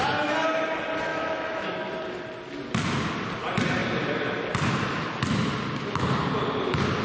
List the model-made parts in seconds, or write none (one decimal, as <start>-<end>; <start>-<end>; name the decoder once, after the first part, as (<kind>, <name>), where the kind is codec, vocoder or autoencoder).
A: 1.1-1.9 (autoencoder, DAC-VAE)